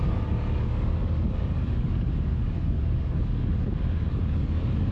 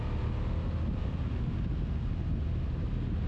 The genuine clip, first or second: second